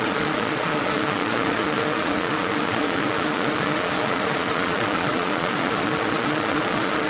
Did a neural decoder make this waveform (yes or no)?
yes